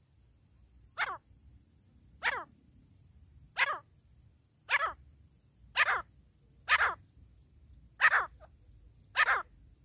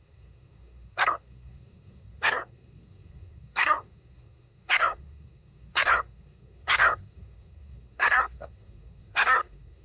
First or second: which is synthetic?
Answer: second